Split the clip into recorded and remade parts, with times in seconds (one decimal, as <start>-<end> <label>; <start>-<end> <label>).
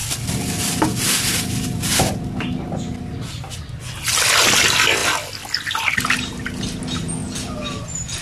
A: 0.0-2.0 remade; 2.0-5.0 recorded; 5.0-6.8 remade; 6.8-7.2 recorded; 7.2-8.2 remade